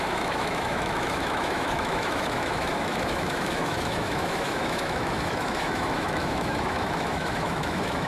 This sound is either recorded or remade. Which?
remade